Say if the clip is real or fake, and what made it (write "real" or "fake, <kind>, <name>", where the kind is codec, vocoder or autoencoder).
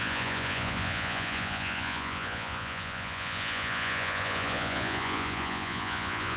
fake, vocoder, Vocos